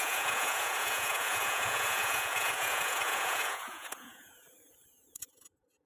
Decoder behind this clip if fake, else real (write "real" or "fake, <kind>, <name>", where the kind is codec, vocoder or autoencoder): fake, vocoder, Vocos